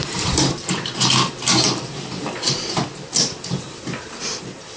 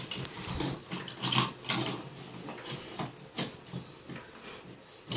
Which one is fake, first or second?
first